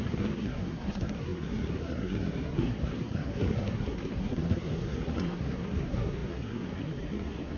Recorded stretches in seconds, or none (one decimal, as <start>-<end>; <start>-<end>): none